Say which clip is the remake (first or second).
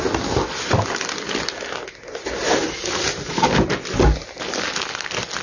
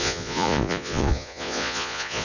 second